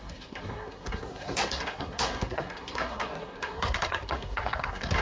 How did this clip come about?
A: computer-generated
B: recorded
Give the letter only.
A